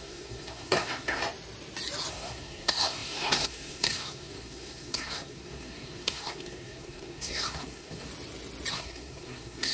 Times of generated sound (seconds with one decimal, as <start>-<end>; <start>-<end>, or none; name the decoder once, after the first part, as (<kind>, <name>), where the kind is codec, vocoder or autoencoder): 0.0-1.2 (codec, SNAC); 2.1-8.1; 8.7-9.7